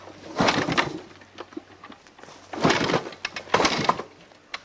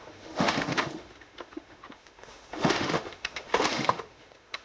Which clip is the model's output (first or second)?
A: second